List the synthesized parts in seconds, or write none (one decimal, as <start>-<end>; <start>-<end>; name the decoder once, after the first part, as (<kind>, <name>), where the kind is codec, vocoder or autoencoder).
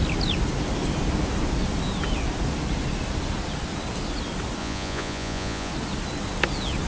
4.6-5.7 (vocoder, Vocos)